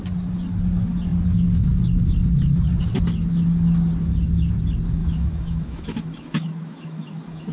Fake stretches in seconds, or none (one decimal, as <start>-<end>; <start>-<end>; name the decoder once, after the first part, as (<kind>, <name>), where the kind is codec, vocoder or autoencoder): 5.0-7.5 (autoencoder, DAC-VAE)